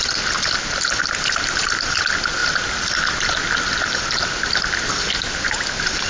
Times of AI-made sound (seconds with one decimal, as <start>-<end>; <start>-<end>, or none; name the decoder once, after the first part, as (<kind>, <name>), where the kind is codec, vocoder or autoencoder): none

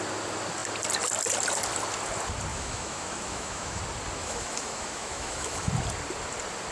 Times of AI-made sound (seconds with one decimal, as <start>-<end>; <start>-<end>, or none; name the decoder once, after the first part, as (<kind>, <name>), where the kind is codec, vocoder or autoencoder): 2.5-3.8 (autoencoder, DAC-VAE); 4.2-5.7